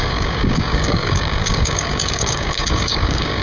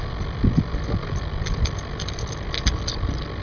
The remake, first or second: first